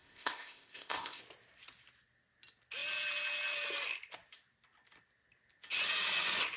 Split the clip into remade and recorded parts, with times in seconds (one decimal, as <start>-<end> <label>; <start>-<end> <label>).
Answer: 0.0-1.2 remade; 1.2-6.6 recorded